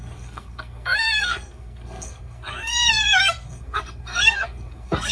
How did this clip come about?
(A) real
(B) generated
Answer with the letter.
B